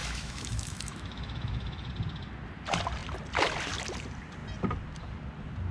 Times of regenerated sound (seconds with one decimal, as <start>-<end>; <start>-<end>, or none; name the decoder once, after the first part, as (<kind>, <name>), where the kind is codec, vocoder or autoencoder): 0.0-1.9 (autoencoder, DAC-VAE)